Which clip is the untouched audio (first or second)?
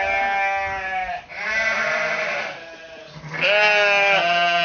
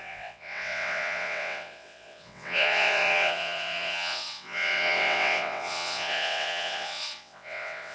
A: first